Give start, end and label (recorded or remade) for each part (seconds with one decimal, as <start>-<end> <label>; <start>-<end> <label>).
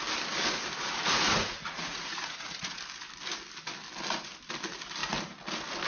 0.0-0.8 recorded; 0.8-2.8 remade; 2.8-5.9 recorded